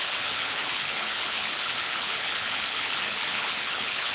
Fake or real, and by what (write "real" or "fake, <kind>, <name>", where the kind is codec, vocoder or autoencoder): fake, codec, HILCodec